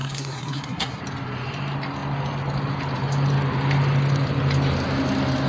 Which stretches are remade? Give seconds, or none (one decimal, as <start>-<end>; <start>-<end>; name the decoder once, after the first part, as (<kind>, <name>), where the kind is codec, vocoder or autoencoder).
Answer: 0.0-1.0 (codec, SNAC)